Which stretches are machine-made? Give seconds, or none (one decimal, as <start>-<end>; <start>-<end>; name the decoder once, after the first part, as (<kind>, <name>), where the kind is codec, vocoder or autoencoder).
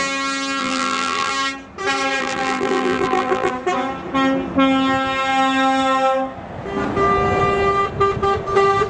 0.6-1.3 (vocoder, BigVGAN v2); 2.2-3.5